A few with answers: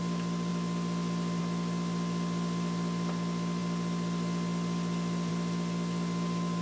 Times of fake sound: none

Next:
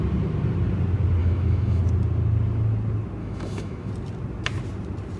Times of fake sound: 1.2-1.8; 3.2-3.9

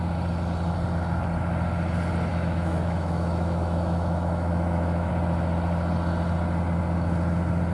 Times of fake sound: 2.3-5.1

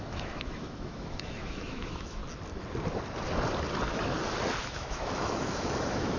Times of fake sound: 0.0-2.2; 4.6-6.2

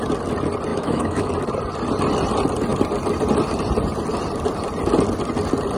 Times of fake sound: 0.7-1.3